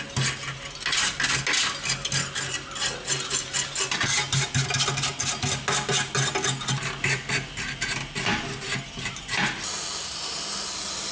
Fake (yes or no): no